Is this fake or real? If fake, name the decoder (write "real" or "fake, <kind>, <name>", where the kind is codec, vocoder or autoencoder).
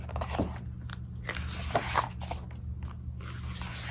real